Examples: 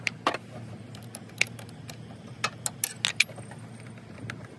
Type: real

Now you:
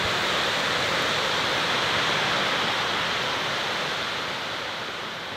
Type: real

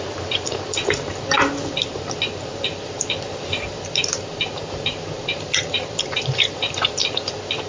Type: fake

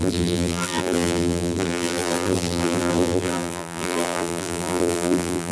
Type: fake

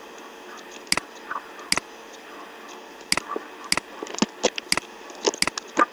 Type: real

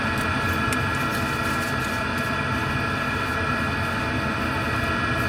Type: real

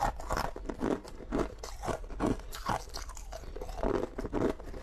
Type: real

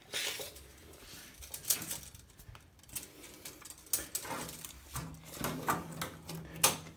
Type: real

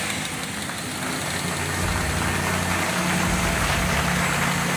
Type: real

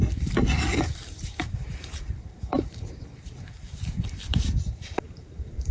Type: fake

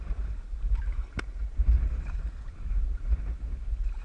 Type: fake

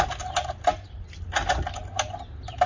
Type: real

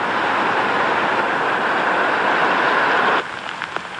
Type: real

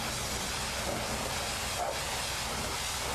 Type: real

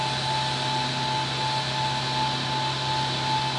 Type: real